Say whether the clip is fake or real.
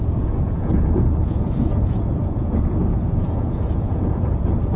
fake